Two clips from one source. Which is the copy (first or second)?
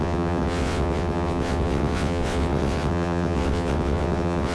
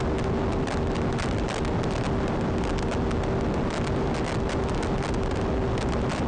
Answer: first